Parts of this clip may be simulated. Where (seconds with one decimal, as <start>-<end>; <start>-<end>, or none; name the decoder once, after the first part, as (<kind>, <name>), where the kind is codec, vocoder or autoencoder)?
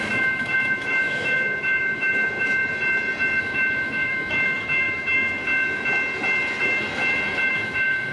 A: 0.0-2.6 (autoencoder, DAC-VAE); 3.4-5.4; 6.6-7.0; 7.5-8.1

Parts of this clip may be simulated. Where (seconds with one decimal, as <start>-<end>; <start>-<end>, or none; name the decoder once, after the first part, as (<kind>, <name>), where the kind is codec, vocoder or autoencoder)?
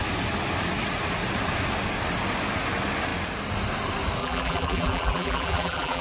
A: 4.2-6.0 (vocoder, BigVGAN v2)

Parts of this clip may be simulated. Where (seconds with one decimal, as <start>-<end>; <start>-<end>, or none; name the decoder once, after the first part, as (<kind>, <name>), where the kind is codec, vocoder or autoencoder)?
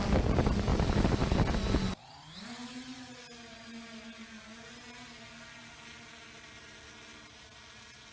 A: none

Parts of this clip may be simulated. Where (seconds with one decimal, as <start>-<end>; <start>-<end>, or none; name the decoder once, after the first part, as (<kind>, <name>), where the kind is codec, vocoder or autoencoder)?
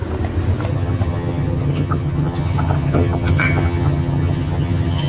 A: 0.7-5.1 (vocoder, HiFi-GAN)